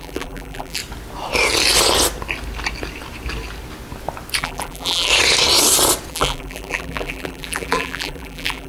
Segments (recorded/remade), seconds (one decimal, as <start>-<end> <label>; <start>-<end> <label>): 0.0-0.8 remade; 0.8-4.4 recorded; 4.4-5.1 remade; 5.1-6.1 recorded; 6.1-8.7 remade